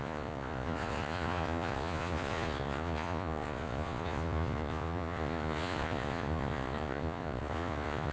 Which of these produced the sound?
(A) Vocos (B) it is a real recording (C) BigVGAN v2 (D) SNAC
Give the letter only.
A